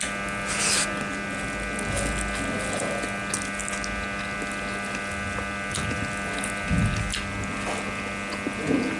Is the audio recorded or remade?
recorded